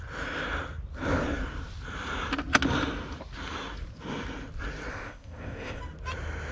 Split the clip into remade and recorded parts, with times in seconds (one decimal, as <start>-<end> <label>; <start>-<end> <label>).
0.0-4.9 recorded; 4.9-5.8 remade; 5.8-6.5 recorded